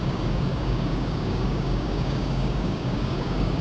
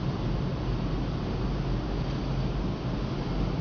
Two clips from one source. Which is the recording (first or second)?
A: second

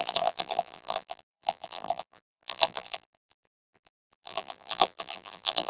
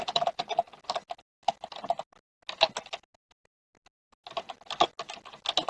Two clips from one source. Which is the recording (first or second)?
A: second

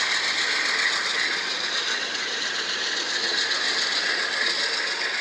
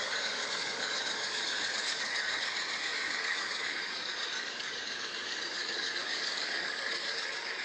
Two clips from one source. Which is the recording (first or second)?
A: first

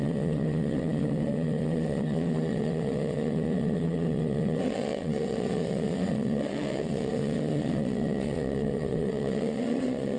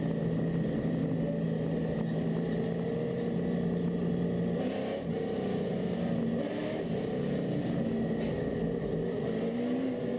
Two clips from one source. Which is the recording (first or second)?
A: second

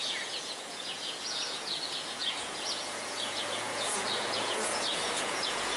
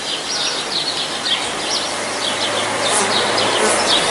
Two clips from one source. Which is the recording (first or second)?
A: second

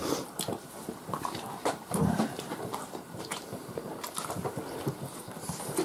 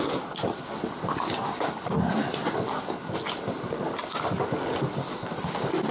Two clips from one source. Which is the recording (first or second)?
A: second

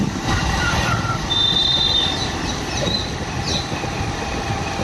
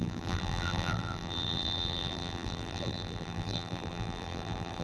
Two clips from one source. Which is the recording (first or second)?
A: first